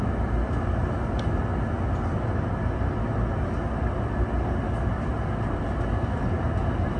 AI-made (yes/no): no